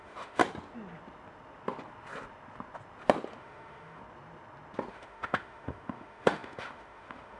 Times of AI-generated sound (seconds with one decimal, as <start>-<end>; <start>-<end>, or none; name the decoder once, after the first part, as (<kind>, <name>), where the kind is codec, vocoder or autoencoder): 0.0-0.4 (autoencoder, DAC-VAE); 3.4-4.0; 4.9-7.4